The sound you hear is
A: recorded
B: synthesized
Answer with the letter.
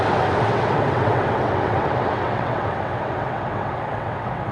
B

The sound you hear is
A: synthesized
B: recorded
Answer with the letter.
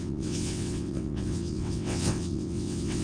A